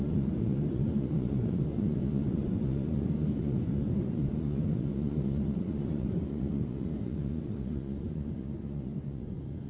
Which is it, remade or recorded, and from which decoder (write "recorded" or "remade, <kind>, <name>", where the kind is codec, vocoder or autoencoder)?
remade, vocoder, Vocos